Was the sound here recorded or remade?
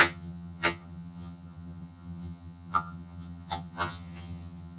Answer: remade